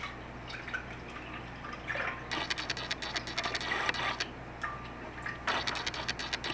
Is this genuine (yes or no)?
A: yes